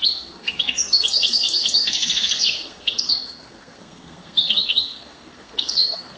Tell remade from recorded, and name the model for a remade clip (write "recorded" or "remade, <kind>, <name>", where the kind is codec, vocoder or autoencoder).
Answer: remade, codec, SNAC